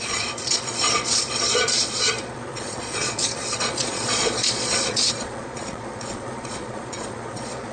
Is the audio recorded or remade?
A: remade